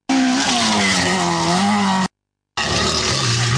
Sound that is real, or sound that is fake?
real